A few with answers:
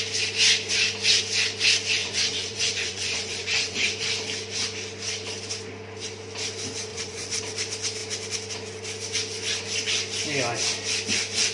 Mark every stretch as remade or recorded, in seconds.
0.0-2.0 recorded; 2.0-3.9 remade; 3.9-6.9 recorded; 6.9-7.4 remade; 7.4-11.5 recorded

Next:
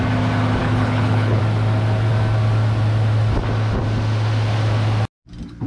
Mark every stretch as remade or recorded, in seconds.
0.0-0.6 recorded; 0.6-1.4 remade; 1.4-5.7 recorded

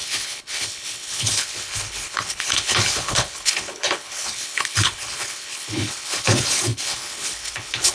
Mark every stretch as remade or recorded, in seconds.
0.0-7.9 remade

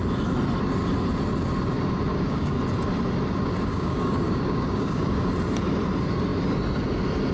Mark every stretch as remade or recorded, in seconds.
0.0-2.1 recorded; 2.1-2.6 remade; 2.6-3.7 recorded; 3.7-5.3 remade; 5.3-7.3 recorded

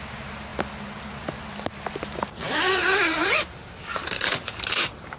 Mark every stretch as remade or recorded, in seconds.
0.0-3.9 recorded; 3.9-5.2 remade

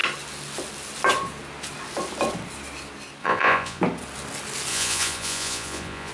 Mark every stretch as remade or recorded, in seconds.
0.0-3.2 recorded; 3.2-3.8 remade; 3.8-4.7 recorded; 4.7-6.1 remade

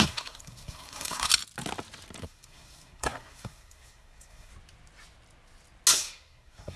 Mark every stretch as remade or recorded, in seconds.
0.0-1.3 remade; 1.3-2.2 recorded; 2.2-4.5 remade; 4.5-5.9 recorded; 5.9-6.8 remade